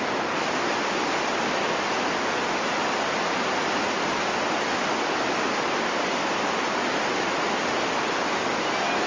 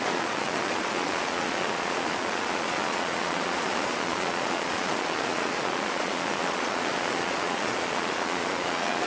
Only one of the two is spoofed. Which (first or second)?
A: second